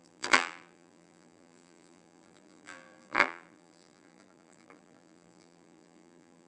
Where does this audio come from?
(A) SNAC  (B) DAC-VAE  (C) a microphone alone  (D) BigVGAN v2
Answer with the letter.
D